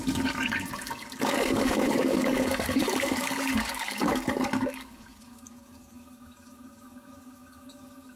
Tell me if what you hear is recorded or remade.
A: remade